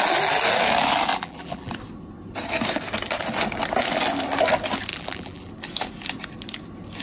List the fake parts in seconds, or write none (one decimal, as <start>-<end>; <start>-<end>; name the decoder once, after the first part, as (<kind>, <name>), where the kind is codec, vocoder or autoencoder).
1.1-1.7 (vocoder, BigVGAN v2); 4.9-5.5